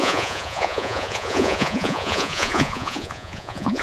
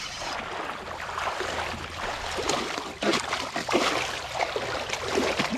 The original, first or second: second